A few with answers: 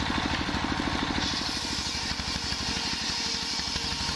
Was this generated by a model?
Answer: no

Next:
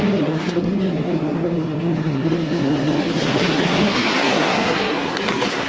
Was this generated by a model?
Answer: yes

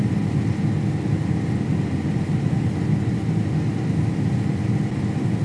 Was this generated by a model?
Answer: no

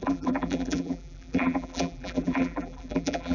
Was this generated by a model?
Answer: yes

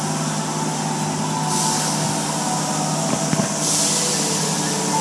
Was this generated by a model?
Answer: no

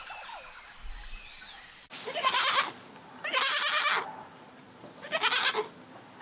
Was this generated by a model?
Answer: no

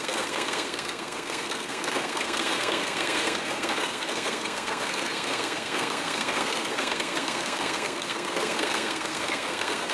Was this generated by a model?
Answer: yes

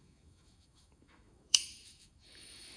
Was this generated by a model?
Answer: yes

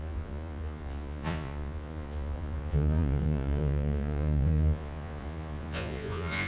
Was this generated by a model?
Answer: yes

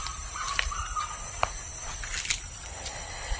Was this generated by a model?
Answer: no